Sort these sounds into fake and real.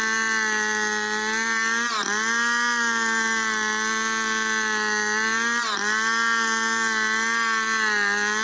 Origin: real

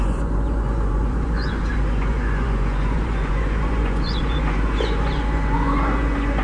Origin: fake